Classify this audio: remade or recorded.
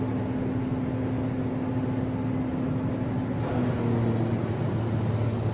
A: recorded